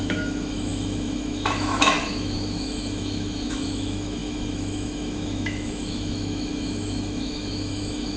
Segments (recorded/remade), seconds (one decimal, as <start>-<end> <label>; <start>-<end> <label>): 0.0-8.2 remade